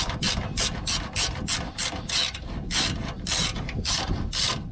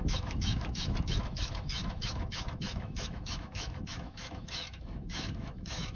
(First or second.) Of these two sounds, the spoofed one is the second